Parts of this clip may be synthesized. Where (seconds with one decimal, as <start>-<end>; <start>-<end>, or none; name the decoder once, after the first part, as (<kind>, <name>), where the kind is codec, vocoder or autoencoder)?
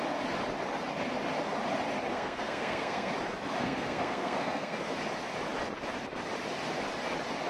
2.1-3.1 (codec, SNAC); 3.6-4.9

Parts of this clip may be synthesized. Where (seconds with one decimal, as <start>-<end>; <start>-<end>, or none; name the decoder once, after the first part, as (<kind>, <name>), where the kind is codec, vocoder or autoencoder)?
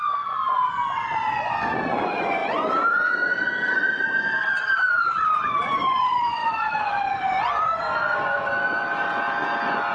0.0-9.9 (vocoder, Vocos)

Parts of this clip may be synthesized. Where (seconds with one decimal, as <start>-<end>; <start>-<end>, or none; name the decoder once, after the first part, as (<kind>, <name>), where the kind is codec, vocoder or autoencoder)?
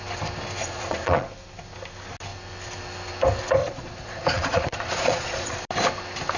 0.6-1.3 (vocoder, Vocos); 3.6-5.6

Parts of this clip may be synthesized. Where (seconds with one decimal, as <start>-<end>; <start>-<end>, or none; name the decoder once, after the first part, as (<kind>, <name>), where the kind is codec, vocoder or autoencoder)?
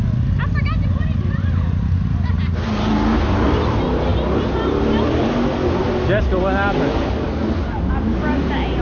none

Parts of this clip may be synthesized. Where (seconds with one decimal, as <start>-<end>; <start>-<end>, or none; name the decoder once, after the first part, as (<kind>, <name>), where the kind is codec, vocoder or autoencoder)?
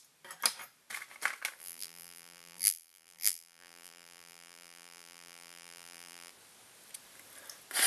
1.6-6.3 (vocoder, BigVGAN v2)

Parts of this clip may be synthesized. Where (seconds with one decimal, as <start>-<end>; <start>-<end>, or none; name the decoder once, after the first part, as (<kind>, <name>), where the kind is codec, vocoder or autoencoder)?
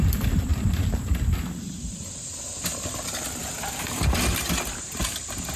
none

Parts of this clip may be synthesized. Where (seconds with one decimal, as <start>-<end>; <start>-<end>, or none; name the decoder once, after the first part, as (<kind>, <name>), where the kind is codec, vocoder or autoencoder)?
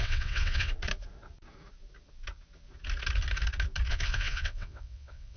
0.0-0.7 (vocoder, WaveNeXt); 3.9-5.4